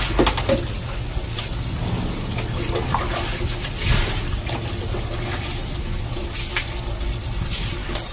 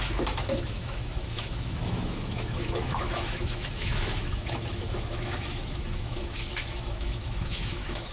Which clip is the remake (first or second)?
second